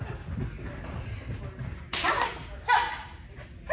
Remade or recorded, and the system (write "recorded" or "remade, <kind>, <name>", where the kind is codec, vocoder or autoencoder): recorded